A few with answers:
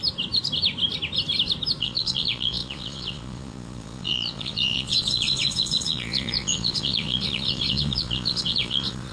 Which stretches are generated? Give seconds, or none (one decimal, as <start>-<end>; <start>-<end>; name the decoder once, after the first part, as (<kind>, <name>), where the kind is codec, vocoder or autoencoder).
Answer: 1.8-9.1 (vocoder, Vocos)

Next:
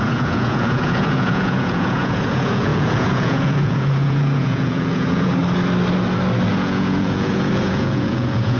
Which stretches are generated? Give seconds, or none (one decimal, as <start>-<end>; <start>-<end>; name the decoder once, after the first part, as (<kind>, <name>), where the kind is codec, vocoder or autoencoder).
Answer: 0.0-5.4 (vocoder, Vocos); 6.5-8.6

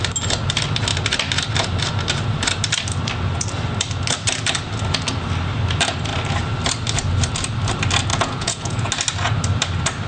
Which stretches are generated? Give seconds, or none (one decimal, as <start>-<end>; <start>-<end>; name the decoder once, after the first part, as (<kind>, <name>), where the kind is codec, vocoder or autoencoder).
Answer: 8.1-8.9 (vocoder, Vocos)